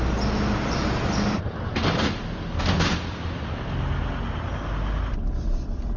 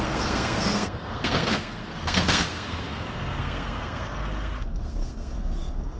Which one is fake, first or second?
second